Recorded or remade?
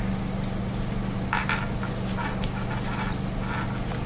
recorded